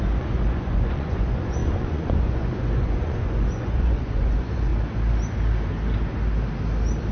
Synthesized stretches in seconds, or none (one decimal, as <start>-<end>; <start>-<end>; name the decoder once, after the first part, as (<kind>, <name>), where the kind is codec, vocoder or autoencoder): 0.0-4.7 (vocoder, Vocos)